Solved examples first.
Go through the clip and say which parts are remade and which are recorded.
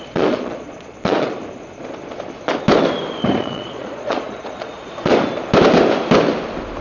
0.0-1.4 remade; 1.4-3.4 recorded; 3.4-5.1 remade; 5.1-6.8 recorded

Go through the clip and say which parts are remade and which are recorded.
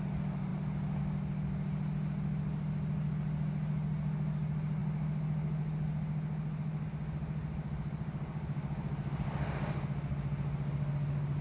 0.0-11.4 recorded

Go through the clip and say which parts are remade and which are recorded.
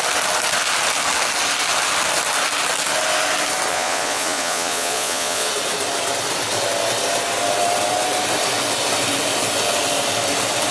0.0-3.7 recorded; 3.7-5.5 remade; 5.5-10.7 recorded